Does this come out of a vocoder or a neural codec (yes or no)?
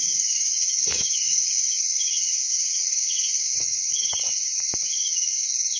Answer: yes